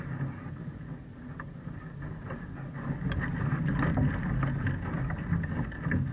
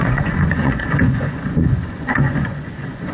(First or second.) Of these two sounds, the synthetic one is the second